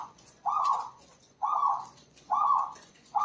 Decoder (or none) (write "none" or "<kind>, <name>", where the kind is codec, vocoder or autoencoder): vocoder, Vocos